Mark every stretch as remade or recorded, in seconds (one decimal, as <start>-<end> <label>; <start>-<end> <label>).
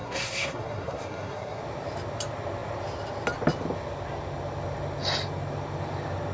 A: 0.0-1.6 remade; 1.6-6.3 recorded